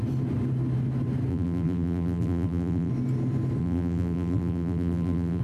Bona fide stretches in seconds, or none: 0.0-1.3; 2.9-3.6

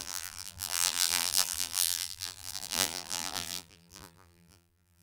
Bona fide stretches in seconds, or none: none

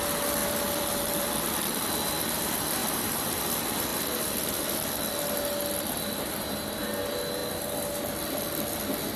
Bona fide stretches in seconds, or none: 0.0-0.4; 1.3-2.8; 3.4-9.2